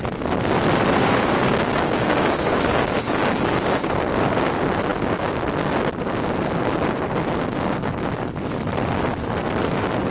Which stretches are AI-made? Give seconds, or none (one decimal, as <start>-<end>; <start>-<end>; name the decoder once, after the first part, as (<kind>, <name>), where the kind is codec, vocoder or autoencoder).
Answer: 1.0-4.5 (codec, DAC)